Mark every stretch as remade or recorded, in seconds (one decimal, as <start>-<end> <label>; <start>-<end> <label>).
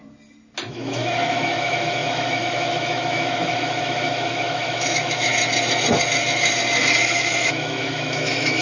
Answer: 0.0-0.7 recorded; 0.7-5.3 remade; 5.3-7.0 recorded; 7.0-8.6 remade